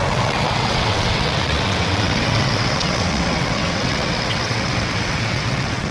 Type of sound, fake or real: fake